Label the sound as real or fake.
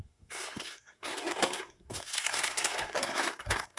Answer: fake